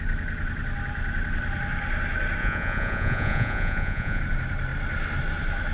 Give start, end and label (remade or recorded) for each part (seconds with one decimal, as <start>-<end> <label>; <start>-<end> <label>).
0.0-2.4 recorded; 2.4-4.2 remade; 4.2-5.7 recorded